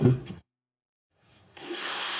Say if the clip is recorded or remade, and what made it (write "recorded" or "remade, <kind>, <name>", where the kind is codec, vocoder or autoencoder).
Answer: remade, codec, SNAC